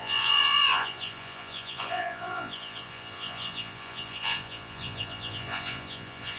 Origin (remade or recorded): remade